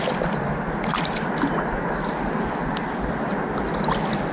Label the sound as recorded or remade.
recorded